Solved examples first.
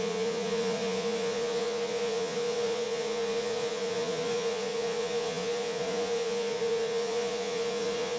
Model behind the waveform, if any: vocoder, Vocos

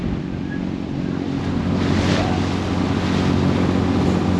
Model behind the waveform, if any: none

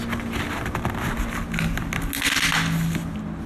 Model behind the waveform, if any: none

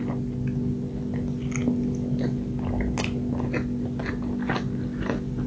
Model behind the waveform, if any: none